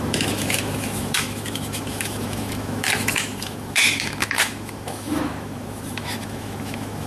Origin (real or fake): fake